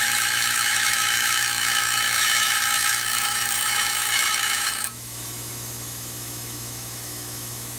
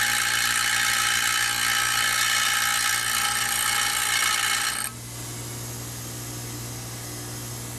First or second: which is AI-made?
first